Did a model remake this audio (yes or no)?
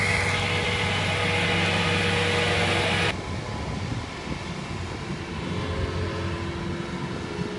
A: no